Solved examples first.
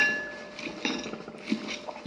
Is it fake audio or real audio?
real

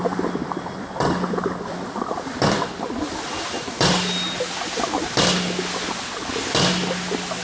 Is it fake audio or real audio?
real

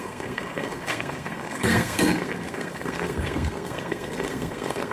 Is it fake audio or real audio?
fake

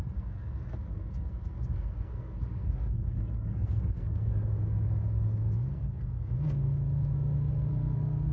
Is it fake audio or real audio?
fake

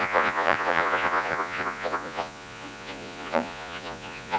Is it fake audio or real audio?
fake